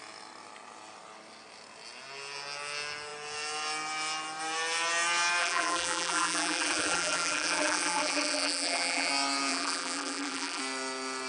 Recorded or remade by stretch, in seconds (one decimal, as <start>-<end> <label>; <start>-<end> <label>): 0.0-5.4 recorded; 5.4-9.1 remade; 9.1-9.5 recorded; 9.5-10.6 remade; 10.6-11.3 recorded